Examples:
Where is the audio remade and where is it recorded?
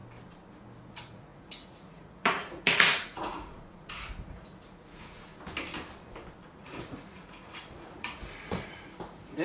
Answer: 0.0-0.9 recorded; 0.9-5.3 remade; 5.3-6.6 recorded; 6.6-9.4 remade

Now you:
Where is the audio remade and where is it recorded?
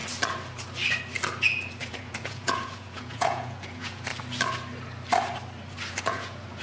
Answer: 0.0-1.9 recorded; 1.9-4.1 remade; 4.1-5.9 recorded; 5.9-6.6 remade